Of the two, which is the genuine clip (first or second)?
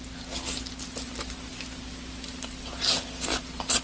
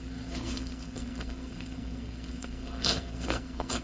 first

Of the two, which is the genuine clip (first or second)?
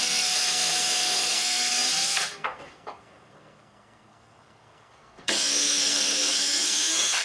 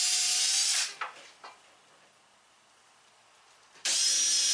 second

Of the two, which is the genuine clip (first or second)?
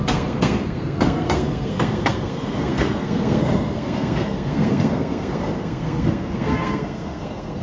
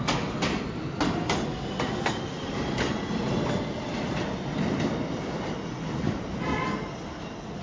second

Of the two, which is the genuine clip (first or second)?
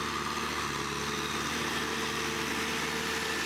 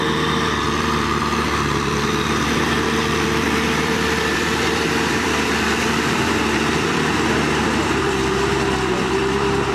first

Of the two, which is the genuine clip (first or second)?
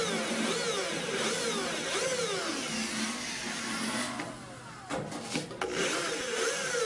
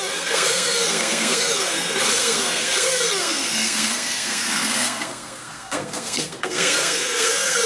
first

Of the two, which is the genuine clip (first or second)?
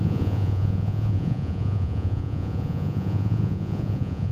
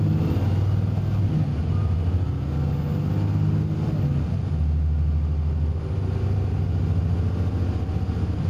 second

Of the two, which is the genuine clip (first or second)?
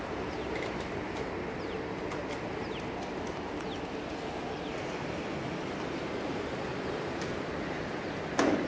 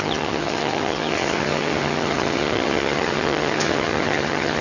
first